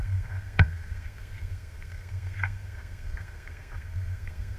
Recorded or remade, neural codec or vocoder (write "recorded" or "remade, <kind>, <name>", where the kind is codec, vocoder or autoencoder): remade, codec, SNAC